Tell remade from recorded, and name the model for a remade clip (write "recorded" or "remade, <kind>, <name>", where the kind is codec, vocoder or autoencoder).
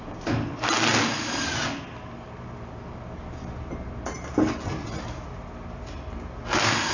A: recorded